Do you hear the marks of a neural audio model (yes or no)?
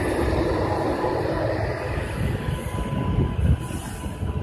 no